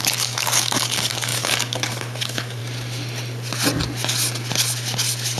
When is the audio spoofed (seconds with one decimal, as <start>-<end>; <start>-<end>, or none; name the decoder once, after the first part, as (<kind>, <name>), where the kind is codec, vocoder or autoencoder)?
0.0-2.6 (codec, DAC)

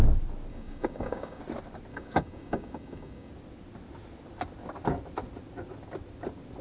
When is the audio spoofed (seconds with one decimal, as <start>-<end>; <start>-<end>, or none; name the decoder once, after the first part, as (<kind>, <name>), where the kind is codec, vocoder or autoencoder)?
0.5-1.4 (codec, DAC); 1.9-3.3

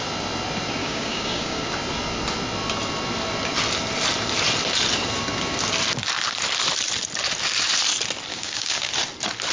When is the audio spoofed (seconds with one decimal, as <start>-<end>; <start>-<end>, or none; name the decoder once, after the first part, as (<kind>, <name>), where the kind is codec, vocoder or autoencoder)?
0.8-1.6 (codec, DAC); 8.3-8.9

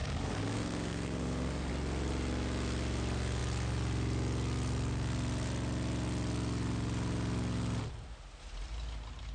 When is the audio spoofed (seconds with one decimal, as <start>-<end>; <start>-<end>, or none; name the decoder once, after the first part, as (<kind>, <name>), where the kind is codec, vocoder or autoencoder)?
0.0-1.7 (codec, DAC)

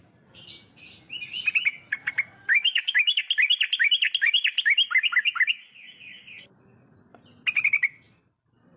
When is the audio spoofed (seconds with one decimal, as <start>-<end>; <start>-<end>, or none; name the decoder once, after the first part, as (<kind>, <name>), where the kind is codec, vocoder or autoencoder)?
2.5-3.2 (codec, DAC)